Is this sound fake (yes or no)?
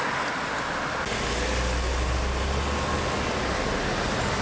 no